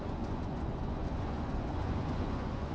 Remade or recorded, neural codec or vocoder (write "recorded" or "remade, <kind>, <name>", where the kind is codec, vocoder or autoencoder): remade, vocoder, Vocos